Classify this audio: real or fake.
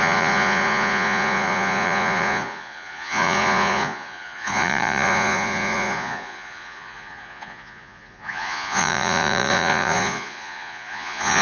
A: fake